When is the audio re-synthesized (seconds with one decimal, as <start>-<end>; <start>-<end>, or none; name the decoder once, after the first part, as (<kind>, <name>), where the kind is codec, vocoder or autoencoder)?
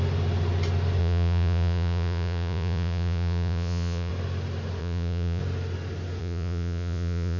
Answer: 1.0-4.1 (vocoder, Vocos); 4.8-5.4; 6.2-7.4